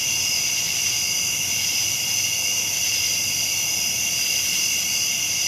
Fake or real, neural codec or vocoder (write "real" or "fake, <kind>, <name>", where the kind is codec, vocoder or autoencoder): real